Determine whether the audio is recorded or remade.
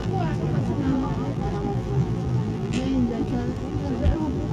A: remade